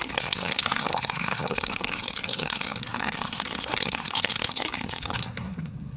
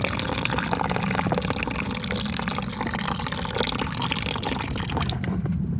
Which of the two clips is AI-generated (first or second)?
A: first